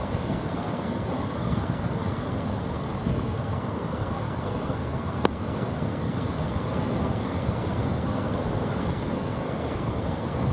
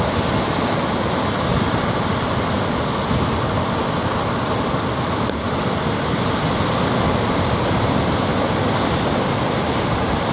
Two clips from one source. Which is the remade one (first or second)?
first